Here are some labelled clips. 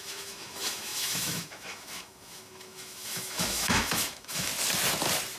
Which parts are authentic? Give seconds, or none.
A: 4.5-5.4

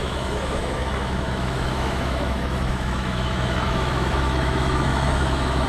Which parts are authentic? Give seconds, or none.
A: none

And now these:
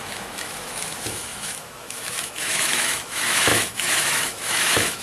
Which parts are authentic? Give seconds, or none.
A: none

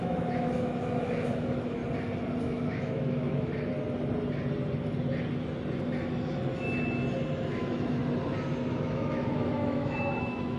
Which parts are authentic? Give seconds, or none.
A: 1.8-2.4; 3.5-7.5; 8.0-8.7

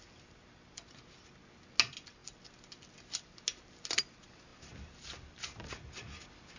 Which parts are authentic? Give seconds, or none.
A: 0.0-6.6

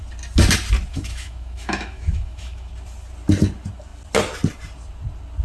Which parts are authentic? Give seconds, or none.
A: 0.0-0.9; 2.7-5.4